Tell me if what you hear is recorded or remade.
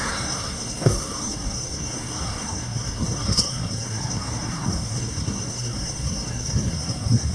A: remade